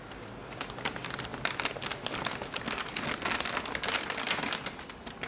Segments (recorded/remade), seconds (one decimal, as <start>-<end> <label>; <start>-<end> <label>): 0.0-5.3 recorded